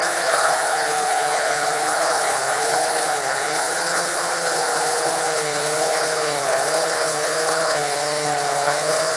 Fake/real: fake